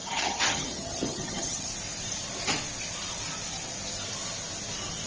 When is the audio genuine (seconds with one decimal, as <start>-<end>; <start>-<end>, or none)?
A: 1.7-5.1